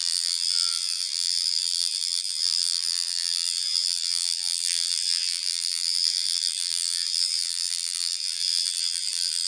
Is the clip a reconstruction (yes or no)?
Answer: yes